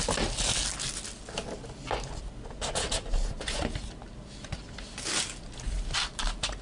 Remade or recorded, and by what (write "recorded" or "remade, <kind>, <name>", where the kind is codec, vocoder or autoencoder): recorded